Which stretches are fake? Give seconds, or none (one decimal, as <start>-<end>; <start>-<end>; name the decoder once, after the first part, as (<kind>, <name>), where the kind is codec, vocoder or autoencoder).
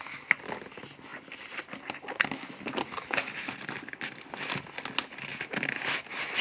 1.1-4.6 (vocoder, BigVGAN v2)